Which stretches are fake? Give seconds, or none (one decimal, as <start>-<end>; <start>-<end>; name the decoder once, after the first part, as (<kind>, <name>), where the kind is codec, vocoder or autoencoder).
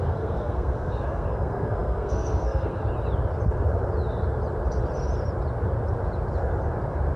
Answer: 0.0-2.8 (codec, SNAC)